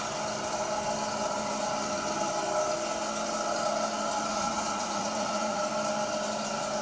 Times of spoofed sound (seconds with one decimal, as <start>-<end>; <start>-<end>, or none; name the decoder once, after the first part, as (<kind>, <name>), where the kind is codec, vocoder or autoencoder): 4.3-5.6 (vocoder, Vocos)